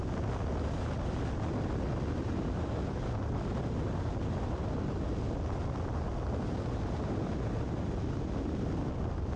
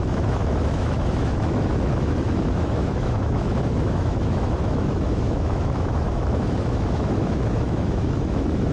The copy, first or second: second